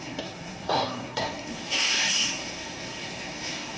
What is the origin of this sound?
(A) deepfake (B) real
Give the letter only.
A